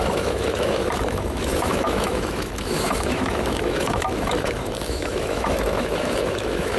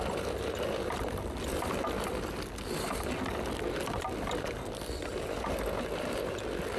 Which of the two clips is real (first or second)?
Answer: second